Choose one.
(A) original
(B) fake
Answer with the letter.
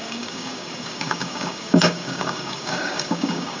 B